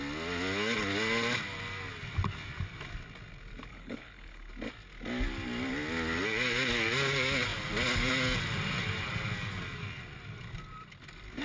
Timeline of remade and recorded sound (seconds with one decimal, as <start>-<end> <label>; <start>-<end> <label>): 0.0-3.7 recorded; 3.7-4.5 remade; 4.5-11.4 recorded